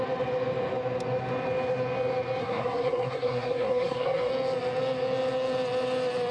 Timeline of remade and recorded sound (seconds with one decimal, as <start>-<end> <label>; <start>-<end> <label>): 0.0-2.4 recorded; 2.4-4.3 remade; 4.3-6.3 recorded